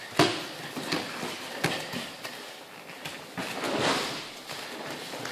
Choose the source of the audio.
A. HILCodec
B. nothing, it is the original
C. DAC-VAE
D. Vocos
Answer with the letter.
B